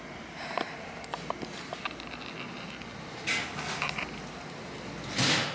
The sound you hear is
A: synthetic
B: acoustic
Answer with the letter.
B